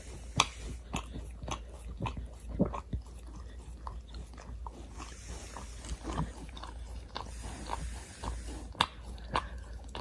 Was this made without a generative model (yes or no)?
yes